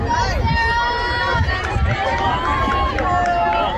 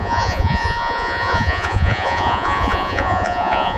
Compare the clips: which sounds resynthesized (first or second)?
second